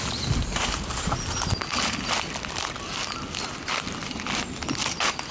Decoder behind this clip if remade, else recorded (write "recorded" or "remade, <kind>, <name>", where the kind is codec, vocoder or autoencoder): recorded